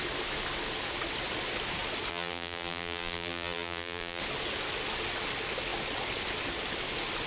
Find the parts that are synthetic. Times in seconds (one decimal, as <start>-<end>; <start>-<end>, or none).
2.1-4.2